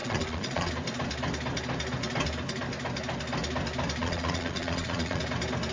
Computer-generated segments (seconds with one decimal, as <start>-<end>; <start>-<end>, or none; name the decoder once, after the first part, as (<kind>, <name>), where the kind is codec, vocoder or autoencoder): 0.0-0.7 (vocoder, Vocos); 4.0-5.2